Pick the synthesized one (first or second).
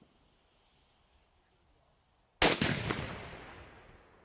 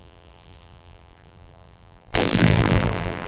second